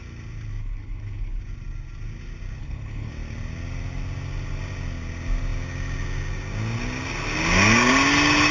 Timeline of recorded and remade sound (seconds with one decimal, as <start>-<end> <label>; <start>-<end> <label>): 0.0-0.6 recorded; 0.6-1.4 remade; 1.4-2.6 recorded; 2.6-3.1 remade; 3.1-8.5 recorded